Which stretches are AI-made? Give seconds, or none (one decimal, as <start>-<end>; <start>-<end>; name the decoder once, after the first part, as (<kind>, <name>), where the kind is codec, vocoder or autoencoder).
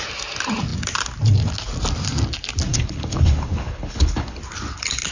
2.7-4.4 (codec, HILCodec)